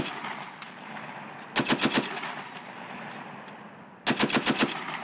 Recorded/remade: recorded